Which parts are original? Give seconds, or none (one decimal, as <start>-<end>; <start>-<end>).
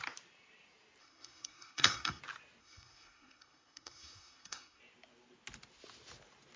0.0-1.0; 2.2-2.6; 4.8-6.6